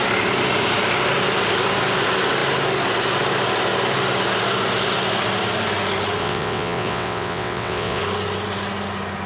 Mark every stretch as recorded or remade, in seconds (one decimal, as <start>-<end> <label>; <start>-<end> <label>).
0.0-6.2 recorded; 6.2-8.0 remade; 8.0-9.3 recorded